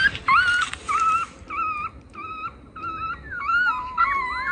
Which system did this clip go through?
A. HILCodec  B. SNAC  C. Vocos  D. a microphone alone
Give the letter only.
D